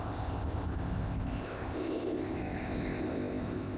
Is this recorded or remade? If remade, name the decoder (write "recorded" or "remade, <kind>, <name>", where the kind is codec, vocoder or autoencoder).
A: remade, codec, ZipCodec